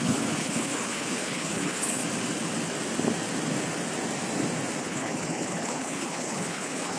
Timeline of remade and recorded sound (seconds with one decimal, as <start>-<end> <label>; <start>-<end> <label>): 0.0-2.0 remade; 2.0-4.8 recorded; 4.8-7.0 remade

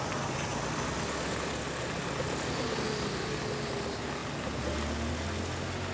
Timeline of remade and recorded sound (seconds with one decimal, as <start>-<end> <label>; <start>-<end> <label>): 0.0-5.9 recorded